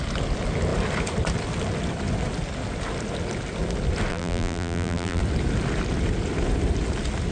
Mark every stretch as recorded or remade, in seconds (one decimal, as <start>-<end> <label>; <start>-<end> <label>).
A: 0.0-4.1 recorded; 4.1-5.2 remade; 5.2-7.3 recorded